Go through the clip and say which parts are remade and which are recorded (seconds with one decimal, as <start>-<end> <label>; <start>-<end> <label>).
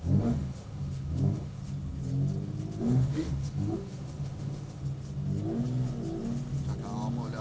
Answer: 0.0-1.6 remade; 1.6-2.8 recorded; 2.8-4.8 remade; 4.8-7.4 recorded